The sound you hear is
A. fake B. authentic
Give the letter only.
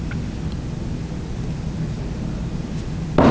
B